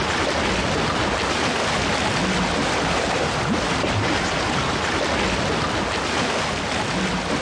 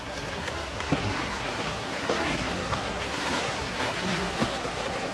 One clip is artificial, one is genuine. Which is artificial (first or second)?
second